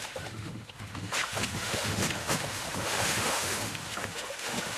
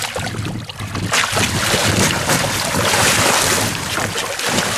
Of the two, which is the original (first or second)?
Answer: second